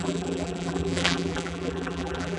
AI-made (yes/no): yes